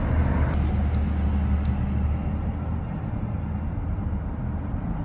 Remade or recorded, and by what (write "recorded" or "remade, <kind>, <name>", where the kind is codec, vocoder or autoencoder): recorded